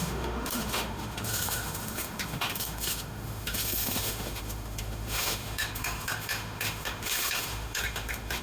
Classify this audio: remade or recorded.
remade